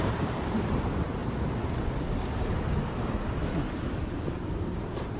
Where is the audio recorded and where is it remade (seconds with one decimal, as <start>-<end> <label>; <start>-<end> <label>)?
0.0-1.2 remade; 1.2-4.3 recorded; 4.3-5.2 remade